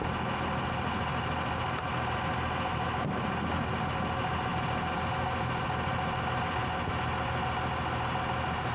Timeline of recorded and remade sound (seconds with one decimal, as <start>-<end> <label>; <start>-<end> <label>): 0.0-8.7 recorded